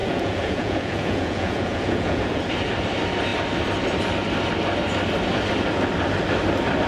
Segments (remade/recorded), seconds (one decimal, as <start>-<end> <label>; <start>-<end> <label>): 0.0-2.4 remade; 2.4-6.9 recorded